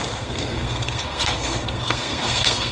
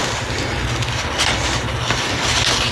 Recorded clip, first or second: second